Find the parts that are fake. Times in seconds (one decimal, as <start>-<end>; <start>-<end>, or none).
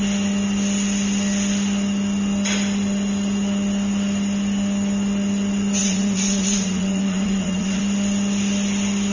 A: 5.8-7.8